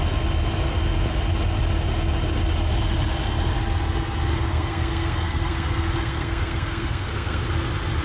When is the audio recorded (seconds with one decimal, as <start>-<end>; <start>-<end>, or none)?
0.0-4.3; 7.5-8.0